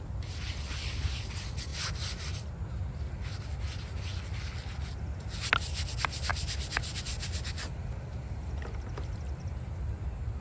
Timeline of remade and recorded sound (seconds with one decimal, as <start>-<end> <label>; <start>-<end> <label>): 0.0-10.4 recorded